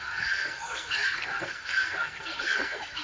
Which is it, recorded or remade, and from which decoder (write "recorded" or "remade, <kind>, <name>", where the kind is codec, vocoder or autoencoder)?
remade, codec, SNAC